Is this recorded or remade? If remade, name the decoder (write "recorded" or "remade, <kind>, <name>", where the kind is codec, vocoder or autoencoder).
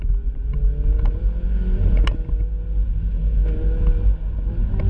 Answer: recorded